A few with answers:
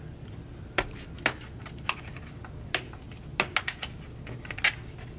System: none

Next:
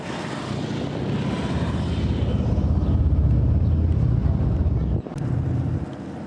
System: none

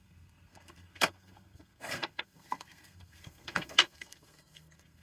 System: codec, SNAC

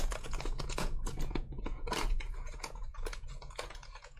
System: vocoder, Vocos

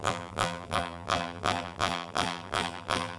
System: vocoder, BigVGAN v2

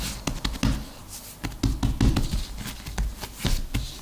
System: none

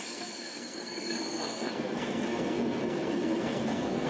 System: codec, SNAC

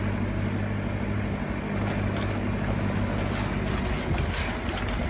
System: none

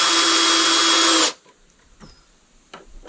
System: none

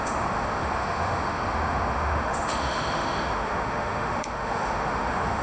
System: autoencoder, DAC-VAE